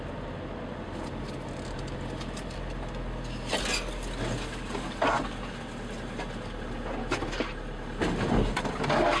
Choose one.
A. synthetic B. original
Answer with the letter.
B